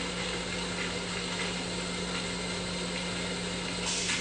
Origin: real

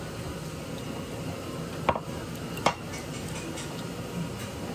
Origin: real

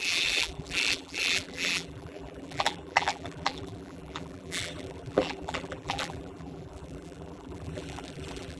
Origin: fake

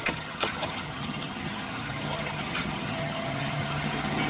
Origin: fake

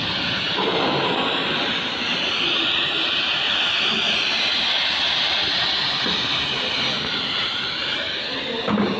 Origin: real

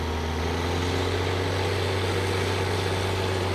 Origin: real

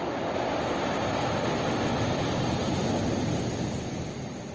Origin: real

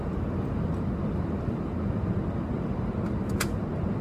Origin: real